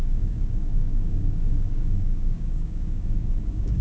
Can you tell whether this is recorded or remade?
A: remade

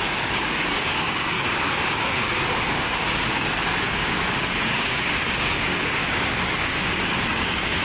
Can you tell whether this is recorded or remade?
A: remade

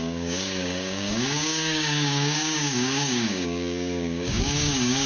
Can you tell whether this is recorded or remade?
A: remade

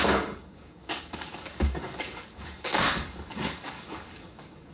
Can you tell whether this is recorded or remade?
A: remade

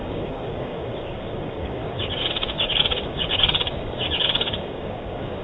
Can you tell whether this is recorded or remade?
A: remade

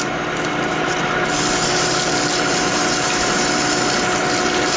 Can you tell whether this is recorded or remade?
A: recorded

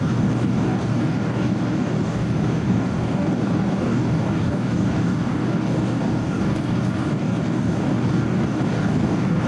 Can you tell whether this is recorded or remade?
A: remade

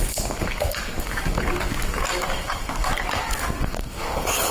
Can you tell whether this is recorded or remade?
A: remade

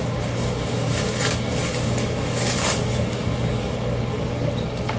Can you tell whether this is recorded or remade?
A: remade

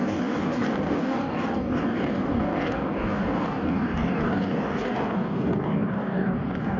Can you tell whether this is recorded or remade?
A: remade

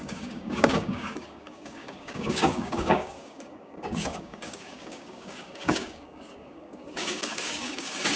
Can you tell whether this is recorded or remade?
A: remade